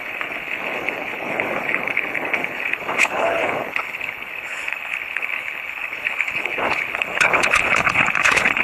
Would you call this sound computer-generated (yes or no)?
yes